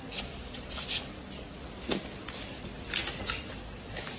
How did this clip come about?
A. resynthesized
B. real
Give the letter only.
B